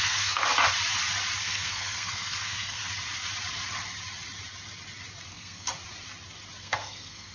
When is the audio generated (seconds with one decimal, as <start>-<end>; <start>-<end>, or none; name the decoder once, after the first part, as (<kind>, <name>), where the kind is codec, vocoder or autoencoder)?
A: 0.0-0.4 (codec, SNAC); 1.4-2.8; 5.3-5.7; 6.6-7.3